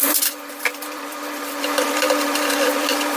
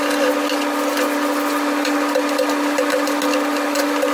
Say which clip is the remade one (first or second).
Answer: first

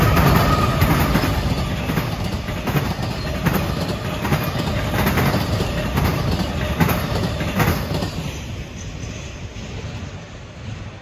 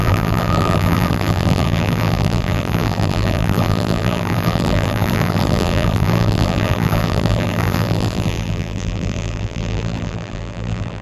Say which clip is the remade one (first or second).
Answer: second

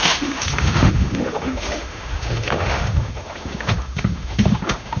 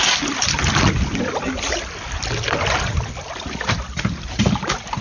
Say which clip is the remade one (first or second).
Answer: first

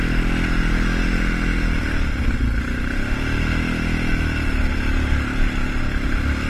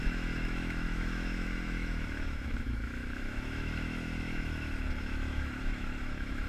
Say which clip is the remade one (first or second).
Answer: second